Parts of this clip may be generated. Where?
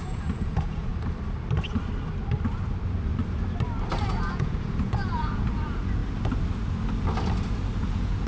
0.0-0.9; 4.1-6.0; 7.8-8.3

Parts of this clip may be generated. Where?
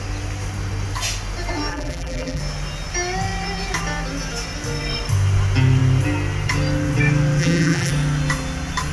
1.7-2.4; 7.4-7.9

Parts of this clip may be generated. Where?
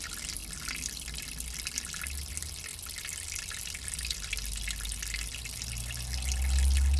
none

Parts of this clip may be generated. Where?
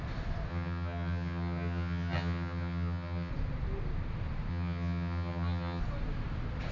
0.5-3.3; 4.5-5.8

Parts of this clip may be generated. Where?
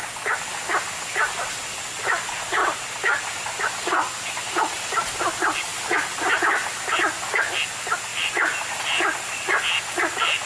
2.6-3.2; 8.1-9.8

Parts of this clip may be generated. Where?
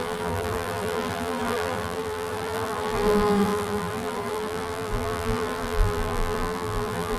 0.0-7.2